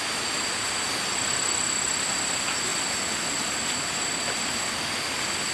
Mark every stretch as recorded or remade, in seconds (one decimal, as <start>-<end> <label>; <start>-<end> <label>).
0.0-5.5 recorded